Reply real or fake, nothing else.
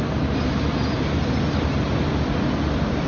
real